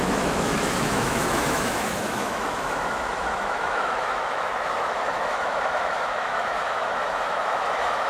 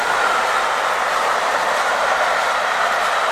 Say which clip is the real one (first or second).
second